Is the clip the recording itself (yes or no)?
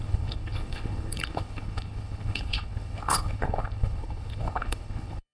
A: no